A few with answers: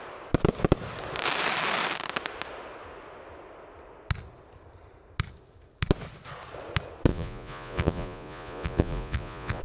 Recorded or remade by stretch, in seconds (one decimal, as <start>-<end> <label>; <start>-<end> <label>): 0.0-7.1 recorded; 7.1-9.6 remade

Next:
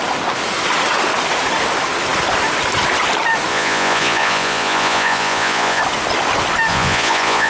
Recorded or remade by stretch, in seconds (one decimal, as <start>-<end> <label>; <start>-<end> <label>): 0.0-3.5 recorded; 3.5-5.8 remade; 5.8-6.7 recorded; 6.7-7.5 remade

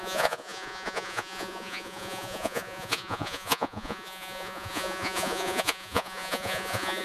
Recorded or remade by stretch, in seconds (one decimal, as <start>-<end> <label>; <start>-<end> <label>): 0.0-7.0 remade